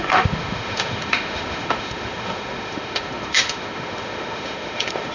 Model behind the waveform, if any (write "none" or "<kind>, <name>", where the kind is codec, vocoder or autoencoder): autoencoder, DAC-VAE